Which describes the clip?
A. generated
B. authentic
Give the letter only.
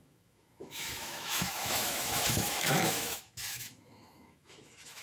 A